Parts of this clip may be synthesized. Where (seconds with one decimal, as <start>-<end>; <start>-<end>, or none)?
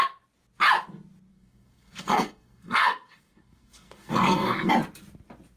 1.3-4.7